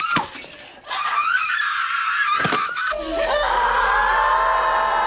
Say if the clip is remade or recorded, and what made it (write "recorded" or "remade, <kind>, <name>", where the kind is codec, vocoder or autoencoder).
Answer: recorded